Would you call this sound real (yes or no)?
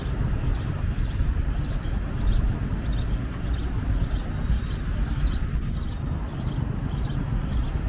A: yes